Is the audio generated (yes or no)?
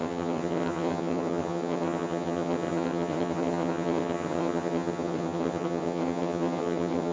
yes